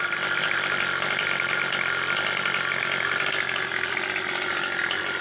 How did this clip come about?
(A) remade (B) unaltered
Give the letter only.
B